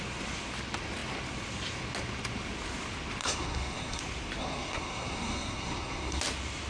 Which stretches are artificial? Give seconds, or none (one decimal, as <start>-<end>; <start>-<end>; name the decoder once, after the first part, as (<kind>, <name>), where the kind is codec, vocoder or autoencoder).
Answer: 3.2-4.0 (codec, SNAC); 4.4-6.2